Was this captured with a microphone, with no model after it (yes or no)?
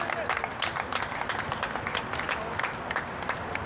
yes